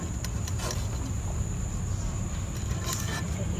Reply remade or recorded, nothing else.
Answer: recorded